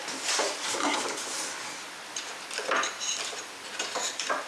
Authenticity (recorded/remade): recorded